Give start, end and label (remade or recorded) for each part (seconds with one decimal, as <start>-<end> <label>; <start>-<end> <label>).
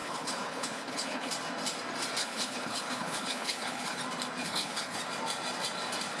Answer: 0.0-1.3 remade; 1.3-2.2 recorded; 2.2-4.0 remade; 4.0-4.4 recorded; 4.4-5.0 remade; 5.0-6.2 recorded